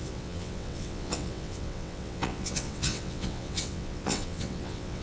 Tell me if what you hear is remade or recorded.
remade